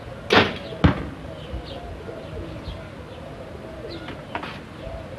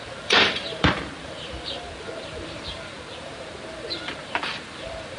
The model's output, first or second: second